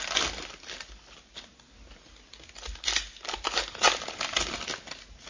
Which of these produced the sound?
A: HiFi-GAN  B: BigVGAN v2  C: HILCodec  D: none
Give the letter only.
D